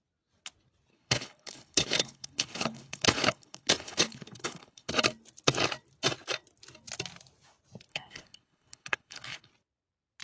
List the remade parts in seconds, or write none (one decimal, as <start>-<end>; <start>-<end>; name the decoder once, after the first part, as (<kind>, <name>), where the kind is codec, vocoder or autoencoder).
0.9-4.9 (codec, HILCodec); 7.9-9.5